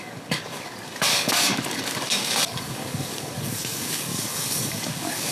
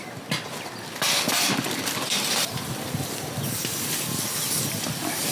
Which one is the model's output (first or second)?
first